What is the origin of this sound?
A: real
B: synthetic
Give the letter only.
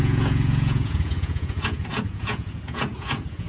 B